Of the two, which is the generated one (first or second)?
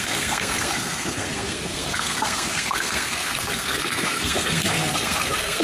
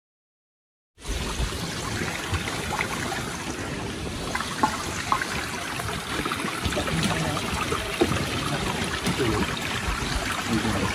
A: first